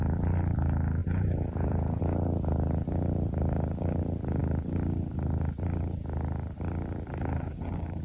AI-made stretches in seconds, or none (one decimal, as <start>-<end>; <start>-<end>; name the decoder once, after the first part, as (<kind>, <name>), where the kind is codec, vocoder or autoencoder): 1.0-2.0 (vocoder, Vocos)

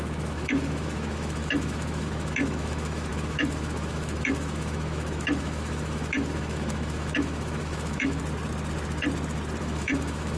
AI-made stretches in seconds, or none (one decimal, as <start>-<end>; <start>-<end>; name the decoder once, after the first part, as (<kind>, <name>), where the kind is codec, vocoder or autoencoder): 0.0-8.2 (autoencoder, DAC-VAE); 9.6-10.4

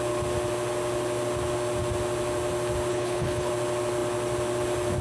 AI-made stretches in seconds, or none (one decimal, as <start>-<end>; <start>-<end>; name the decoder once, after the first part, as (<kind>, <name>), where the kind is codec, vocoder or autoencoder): 2.9-3.5 (codec, HILCodec)

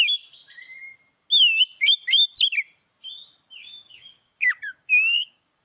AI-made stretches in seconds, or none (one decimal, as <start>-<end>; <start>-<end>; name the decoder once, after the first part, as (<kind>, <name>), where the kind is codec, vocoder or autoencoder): 3.6-5.6 (codec, DAC)

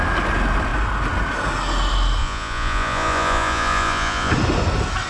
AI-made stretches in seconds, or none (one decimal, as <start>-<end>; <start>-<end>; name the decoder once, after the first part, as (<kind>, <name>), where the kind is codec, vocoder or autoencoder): 2.2-4.3 (vocoder, Vocos)